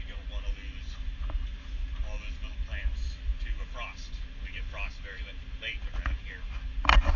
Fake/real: real